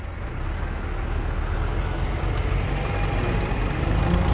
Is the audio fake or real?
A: real